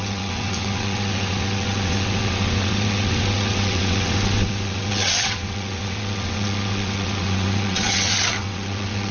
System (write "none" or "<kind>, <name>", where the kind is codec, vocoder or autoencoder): vocoder, WaveNeXt